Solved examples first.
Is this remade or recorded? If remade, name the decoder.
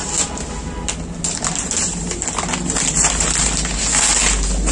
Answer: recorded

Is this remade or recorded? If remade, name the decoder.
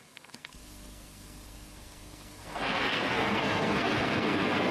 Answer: remade, codec, SNAC